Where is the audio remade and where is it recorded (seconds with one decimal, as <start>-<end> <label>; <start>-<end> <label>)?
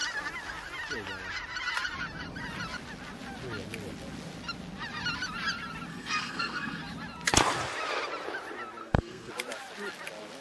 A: 0.0-5.9 recorded; 5.9-6.8 remade; 6.8-8.8 recorded; 8.8-9.3 remade; 9.3-10.4 recorded